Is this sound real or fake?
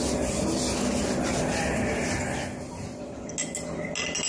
real